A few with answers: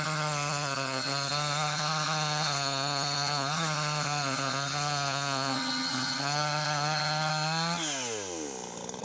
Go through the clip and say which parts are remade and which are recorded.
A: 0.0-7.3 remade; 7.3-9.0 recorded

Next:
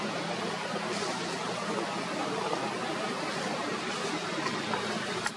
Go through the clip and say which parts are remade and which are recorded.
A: 0.0-5.4 recorded

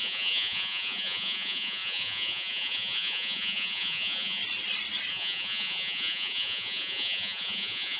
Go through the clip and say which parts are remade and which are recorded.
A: 0.0-4.4 remade; 4.4-5.1 recorded; 5.1-8.0 remade

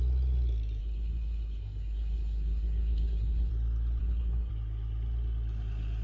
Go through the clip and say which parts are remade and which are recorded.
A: 0.0-0.8 recorded; 0.8-3.5 remade; 3.5-4.0 recorded; 4.0-4.5 remade; 4.5-6.0 recorded

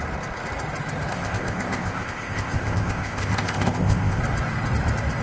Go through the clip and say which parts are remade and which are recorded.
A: 0.0-1.1 recorded; 1.1-4.2 remade; 4.2-5.2 recorded

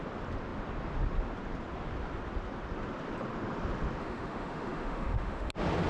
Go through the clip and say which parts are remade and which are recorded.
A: 0.0-4.0 recorded; 4.0-5.5 remade; 5.5-5.9 recorded